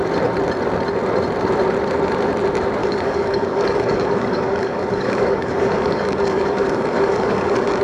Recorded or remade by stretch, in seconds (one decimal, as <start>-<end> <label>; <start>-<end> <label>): 0.0-2.8 recorded; 2.8-7.8 remade